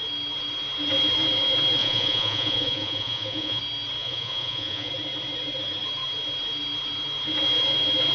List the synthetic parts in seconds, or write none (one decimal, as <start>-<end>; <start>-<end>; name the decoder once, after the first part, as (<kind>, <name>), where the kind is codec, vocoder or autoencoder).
1.8-3.6 (vocoder, Vocos); 4.0-4.9